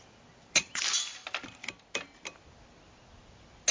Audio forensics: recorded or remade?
recorded